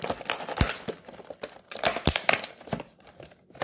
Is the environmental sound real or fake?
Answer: fake